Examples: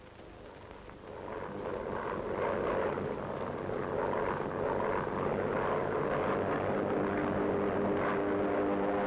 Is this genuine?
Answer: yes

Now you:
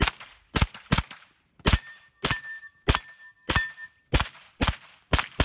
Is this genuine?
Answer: yes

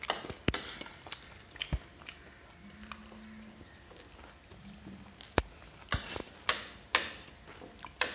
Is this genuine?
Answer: yes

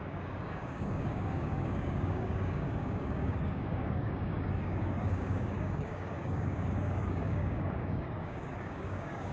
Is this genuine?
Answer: no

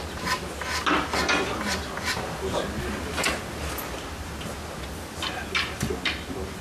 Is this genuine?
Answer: yes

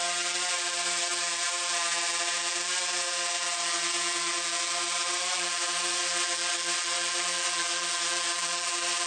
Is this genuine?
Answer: yes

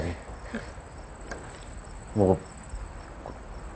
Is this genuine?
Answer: yes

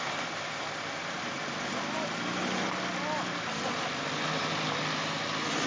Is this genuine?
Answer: yes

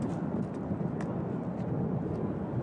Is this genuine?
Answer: no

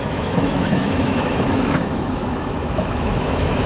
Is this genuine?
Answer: no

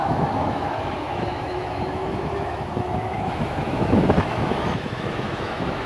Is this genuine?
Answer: no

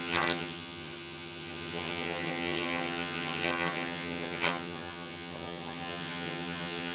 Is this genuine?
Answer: no